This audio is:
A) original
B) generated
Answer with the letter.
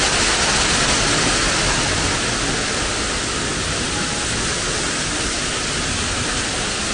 A